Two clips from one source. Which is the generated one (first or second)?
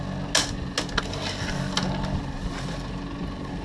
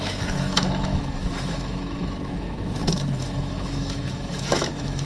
second